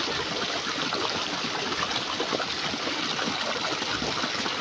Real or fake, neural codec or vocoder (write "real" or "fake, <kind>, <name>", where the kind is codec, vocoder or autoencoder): real